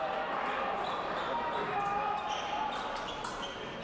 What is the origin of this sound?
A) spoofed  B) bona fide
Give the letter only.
B